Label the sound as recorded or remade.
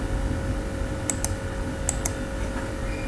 recorded